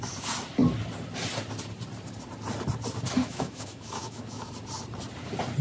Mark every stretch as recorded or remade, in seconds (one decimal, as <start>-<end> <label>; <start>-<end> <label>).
0.0-3.2 recorded; 3.2-4.5 remade; 4.5-5.6 recorded